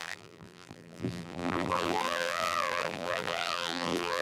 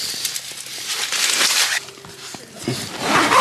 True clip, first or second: second